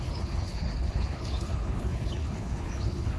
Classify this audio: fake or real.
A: fake